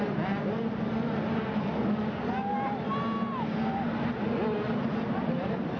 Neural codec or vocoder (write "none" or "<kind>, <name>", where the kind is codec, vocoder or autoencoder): none